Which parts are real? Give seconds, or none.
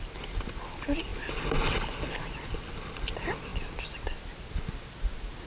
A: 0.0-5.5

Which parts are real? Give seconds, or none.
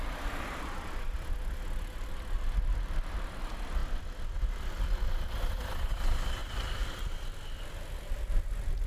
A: 0.0-8.9